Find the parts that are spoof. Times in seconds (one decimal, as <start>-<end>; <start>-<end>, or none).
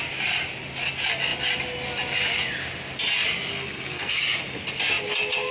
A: 3.5-4.2